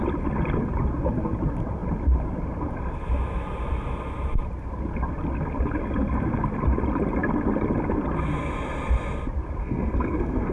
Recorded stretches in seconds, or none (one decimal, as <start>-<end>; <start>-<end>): 0.0-9.6